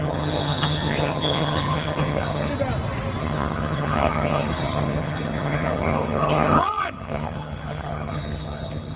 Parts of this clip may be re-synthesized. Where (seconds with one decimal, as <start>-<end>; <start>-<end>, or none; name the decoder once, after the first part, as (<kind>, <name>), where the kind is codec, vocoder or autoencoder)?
0.0-2.5 (vocoder, HiFi-GAN); 3.2-9.0